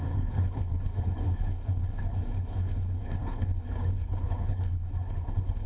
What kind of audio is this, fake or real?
fake